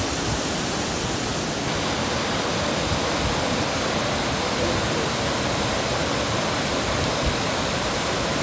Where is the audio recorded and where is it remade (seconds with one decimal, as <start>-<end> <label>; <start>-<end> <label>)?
0.0-8.4 recorded